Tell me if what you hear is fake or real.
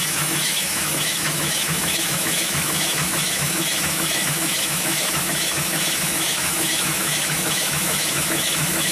fake